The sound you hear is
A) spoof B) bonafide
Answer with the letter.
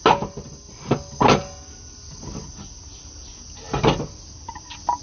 B